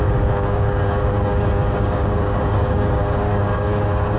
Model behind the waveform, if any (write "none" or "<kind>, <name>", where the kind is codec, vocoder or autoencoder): codec, DAC